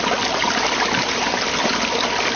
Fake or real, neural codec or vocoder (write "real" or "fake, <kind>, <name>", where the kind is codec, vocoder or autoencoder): real